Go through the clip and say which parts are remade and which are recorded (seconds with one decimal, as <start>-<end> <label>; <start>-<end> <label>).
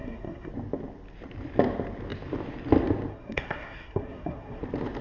0.0-0.5 remade; 0.5-3.1 recorded; 3.1-4.6 remade; 4.6-5.0 recorded